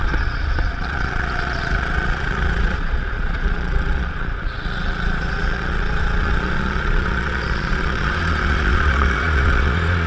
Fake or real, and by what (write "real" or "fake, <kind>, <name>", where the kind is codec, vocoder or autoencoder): fake, vocoder, Vocos